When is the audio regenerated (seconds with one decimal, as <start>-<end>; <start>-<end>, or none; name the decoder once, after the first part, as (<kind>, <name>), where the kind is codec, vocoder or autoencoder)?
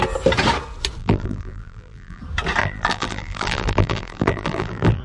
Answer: 1.0-2.2 (vocoder, BigVGAN v2); 2.6-5.0